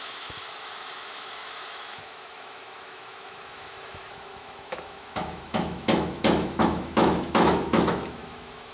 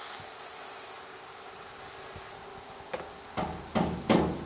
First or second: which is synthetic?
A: first